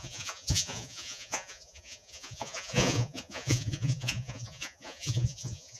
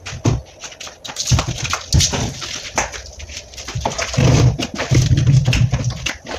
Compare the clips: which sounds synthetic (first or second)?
first